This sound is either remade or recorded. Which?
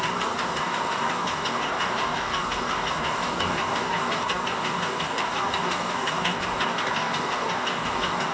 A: remade